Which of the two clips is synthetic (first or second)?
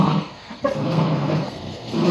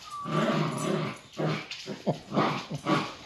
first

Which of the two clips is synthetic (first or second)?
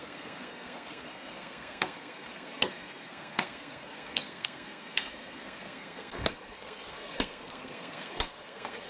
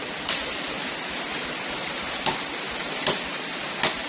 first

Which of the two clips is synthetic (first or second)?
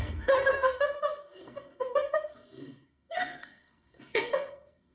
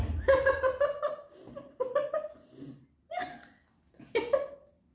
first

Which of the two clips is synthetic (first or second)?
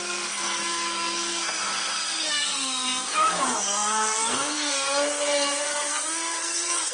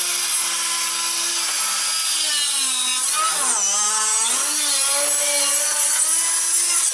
first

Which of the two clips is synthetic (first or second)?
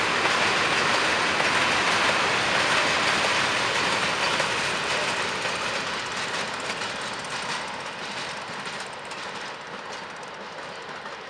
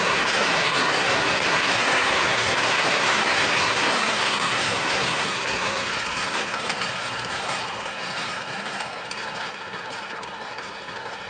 second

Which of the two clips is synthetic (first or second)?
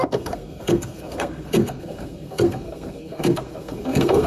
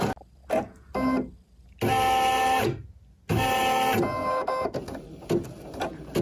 first